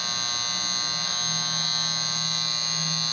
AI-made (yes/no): no